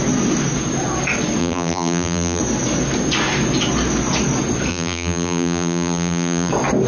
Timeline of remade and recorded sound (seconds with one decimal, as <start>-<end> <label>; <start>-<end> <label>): 0.0-1.4 recorded; 1.4-2.4 remade; 2.4-4.7 recorded; 4.7-6.5 remade; 6.5-6.9 recorded